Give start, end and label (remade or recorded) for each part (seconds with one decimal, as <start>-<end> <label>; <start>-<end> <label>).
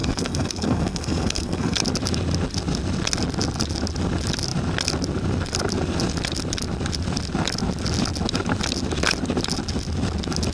0.0-1.8 remade; 1.8-10.5 recorded